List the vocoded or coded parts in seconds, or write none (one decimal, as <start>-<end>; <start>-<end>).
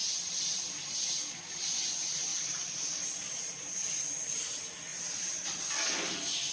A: 0.0-0.8; 2.3-3.9; 4.9-5.6